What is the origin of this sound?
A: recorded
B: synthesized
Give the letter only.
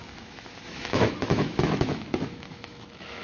B